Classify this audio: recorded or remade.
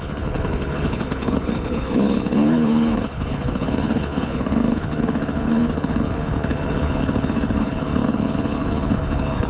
remade